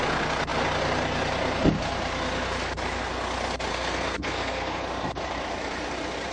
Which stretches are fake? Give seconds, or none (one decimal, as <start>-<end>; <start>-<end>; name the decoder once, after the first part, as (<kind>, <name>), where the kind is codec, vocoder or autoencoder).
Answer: 3.7-4.8 (codec, SNAC)